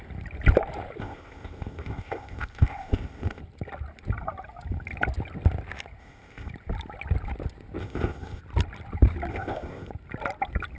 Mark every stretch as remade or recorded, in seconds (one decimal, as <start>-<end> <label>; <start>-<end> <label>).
0.0-1.0 recorded; 1.0-3.4 remade; 3.4-6.0 recorded; 6.0-6.5 remade; 6.5-7.8 recorded; 7.8-8.4 remade; 8.4-9.3 recorded; 9.3-9.9 remade; 9.9-10.8 recorded